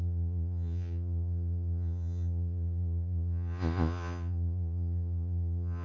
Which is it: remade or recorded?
remade